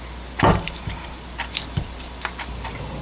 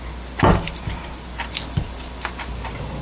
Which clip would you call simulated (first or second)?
first